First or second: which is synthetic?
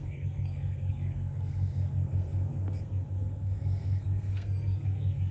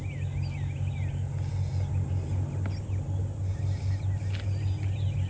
first